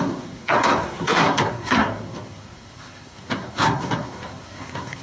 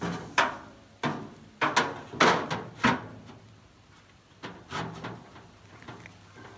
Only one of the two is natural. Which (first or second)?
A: second